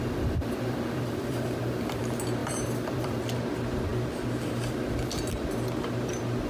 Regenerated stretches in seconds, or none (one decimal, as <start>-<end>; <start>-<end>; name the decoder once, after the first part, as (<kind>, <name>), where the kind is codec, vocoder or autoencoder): 0.0-2.0 (vocoder, BigVGAN v2); 2.4-3.2